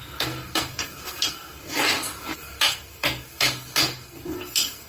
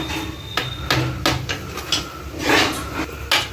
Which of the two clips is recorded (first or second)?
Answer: second